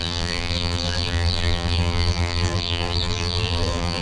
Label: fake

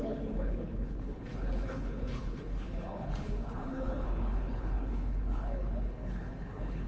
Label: fake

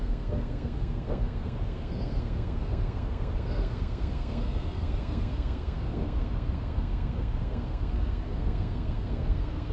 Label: fake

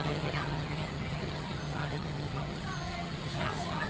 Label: fake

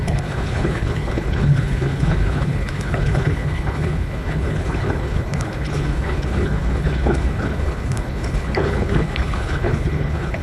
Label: fake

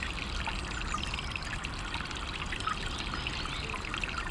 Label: real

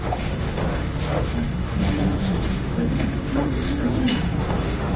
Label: fake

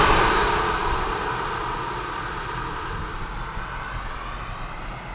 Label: real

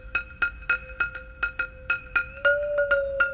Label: real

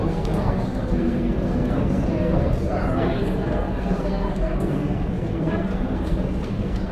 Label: fake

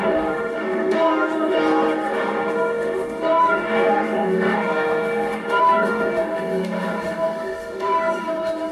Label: fake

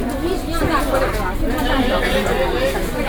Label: real